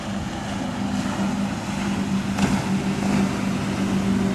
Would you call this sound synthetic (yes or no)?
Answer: no